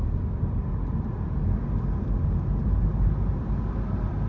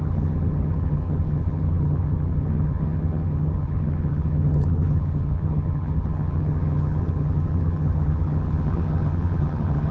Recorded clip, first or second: first